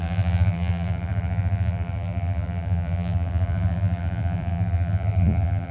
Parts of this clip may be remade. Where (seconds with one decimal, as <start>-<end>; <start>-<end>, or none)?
0.0-5.7